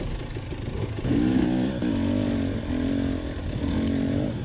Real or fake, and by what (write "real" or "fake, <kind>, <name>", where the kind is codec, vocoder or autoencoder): real